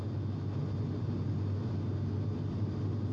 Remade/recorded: recorded